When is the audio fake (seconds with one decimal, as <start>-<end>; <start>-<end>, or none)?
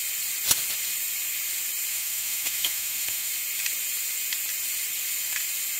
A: 1.9-3.3